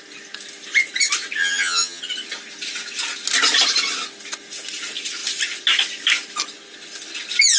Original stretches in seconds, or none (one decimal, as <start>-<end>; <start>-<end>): 0.0-1.4; 2.0-7.6